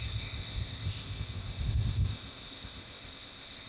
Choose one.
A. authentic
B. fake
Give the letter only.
B